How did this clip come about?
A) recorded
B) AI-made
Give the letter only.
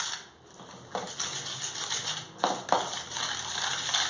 A